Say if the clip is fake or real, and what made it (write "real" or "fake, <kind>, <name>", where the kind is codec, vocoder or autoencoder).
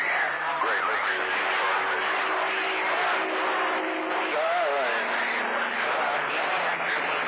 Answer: real